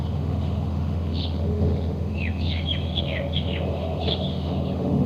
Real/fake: fake